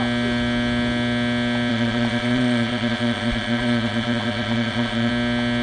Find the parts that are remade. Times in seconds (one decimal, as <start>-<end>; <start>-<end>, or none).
1.7-5.1